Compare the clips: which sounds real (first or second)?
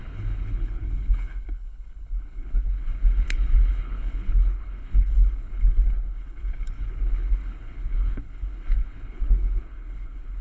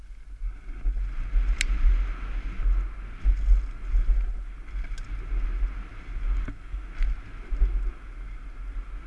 second